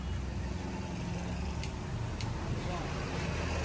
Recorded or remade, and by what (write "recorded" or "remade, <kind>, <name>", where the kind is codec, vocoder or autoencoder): recorded